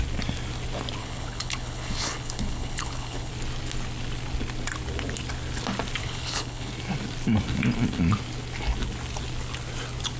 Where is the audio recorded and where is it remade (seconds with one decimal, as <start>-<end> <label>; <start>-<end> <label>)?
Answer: 0.0-1.0 recorded; 1.0-3.3 remade; 3.3-6.0 recorded; 6.0-6.7 remade; 6.7-10.2 recorded